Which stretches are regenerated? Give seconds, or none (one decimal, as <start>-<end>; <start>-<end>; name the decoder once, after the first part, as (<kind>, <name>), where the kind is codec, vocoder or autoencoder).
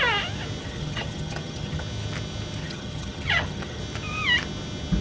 0.6-1.8 (vocoder, HiFi-GAN); 2.6-3.8